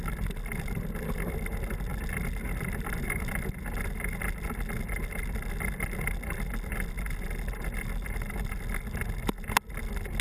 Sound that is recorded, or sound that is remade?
recorded